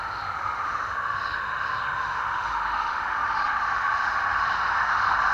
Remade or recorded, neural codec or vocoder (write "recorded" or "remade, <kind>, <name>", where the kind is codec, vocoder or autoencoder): remade, autoencoder, DAC-VAE